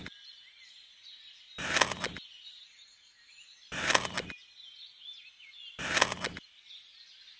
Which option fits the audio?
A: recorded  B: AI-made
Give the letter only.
A